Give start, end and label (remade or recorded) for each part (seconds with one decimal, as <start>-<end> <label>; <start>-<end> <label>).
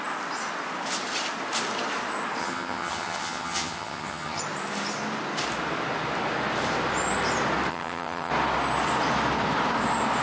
0.0-2.4 recorded; 2.4-4.4 remade; 4.4-7.7 recorded; 7.7-8.3 remade; 8.3-10.2 recorded